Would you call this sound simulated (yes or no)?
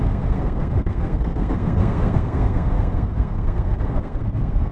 yes